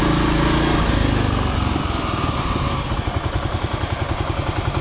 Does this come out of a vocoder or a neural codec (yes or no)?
no